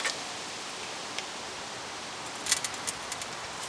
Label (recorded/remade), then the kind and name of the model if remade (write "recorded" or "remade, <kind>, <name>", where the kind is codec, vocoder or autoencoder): recorded